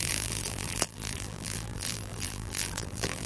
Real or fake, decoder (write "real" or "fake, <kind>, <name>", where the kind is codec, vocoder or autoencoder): fake, vocoder, BigVGAN v2